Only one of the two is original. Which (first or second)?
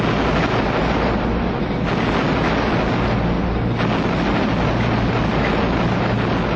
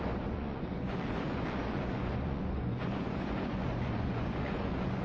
first